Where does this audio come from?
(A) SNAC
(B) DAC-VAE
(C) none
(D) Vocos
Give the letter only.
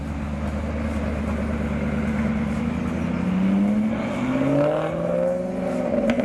C